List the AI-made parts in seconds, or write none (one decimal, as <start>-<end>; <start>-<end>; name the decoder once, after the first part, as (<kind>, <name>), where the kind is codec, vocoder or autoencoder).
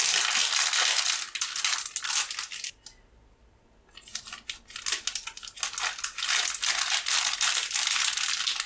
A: none